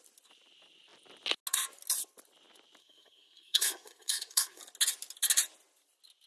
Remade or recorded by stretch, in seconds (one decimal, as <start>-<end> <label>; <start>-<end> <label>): 0.0-2.8 recorded; 2.8-4.6 remade; 4.6-6.3 recorded